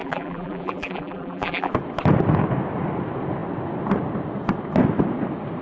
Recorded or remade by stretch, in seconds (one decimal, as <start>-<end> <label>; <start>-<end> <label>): 0.0-1.7 remade; 1.7-5.6 recorded